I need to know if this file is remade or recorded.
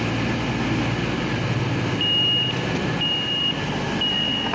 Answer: recorded